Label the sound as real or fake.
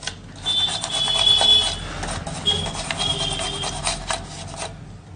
real